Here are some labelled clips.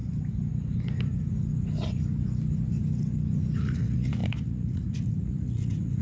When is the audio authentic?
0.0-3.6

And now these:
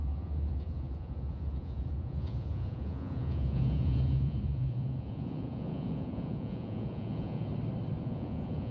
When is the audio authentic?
7.5-8.0

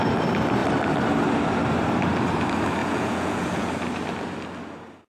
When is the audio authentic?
0.0-2.8; 3.7-5.1

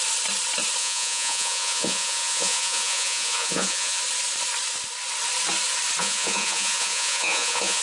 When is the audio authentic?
0.0-0.8; 4.0-6.0

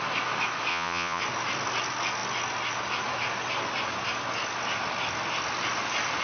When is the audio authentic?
0.0-0.7; 1.2-6.2

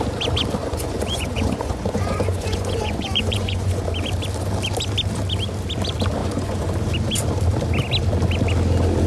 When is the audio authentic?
0.0-0.6; 3.8-6.2; 6.7-9.1

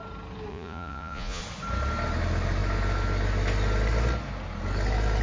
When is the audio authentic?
0.0-0.5; 1.4-5.2